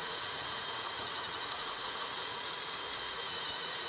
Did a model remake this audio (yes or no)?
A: yes